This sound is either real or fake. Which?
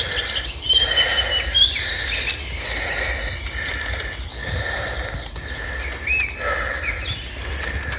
real